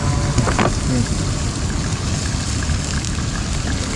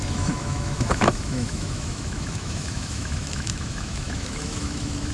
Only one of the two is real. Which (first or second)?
first